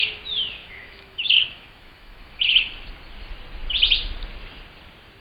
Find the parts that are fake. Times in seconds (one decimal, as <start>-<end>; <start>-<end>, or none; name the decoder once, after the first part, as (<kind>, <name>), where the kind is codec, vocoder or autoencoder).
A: 0.6-2.4 (autoencoder, DAC-VAE)